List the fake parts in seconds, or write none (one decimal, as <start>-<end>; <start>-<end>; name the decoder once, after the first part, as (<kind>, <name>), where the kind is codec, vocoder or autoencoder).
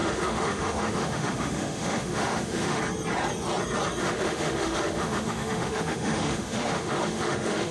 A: 0.0-2.8 (autoencoder, DAC-VAE); 4.0-7.7